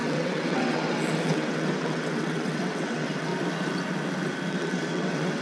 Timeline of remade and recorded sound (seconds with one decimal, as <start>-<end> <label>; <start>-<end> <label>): 0.0-3.3 remade; 3.3-4.5 recorded; 4.5-5.4 remade